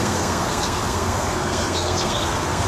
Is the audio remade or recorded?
remade